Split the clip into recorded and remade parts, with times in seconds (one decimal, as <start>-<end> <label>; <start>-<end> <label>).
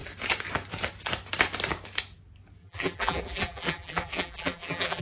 0.0-2.6 recorded; 2.6-5.0 remade